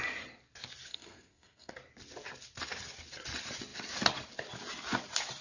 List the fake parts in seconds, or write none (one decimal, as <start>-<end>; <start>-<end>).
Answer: 0.9-1.7